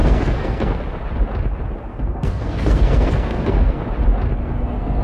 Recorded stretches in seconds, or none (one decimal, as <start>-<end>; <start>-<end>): 0.8-1.9; 3.8-4.4